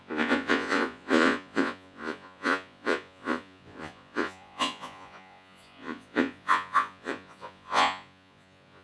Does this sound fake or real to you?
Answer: fake